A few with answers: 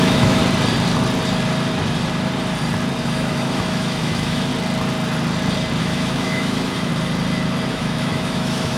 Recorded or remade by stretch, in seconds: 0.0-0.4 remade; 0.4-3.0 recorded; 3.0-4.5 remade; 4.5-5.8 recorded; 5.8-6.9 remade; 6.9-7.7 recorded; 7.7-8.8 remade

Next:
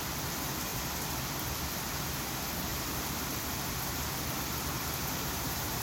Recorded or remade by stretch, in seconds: 0.0-2.7 recorded; 2.7-3.4 remade; 3.4-4.7 recorded; 4.7-5.8 remade

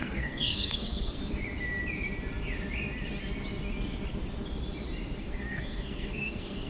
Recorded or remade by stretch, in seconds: 0.0-1.2 remade; 1.2-5.2 recorded; 5.2-6.7 remade

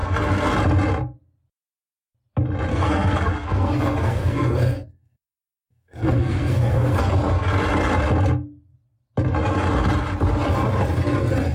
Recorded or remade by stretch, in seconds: 0.0-2.7 recorded; 2.7-7.1 remade; 7.1-11.5 recorded